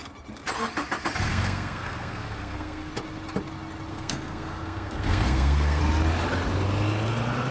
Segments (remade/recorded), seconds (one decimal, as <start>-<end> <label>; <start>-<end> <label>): 0.0-1.3 recorded; 1.3-2.9 remade; 2.9-3.9 recorded; 3.9-5.8 remade; 5.8-7.5 recorded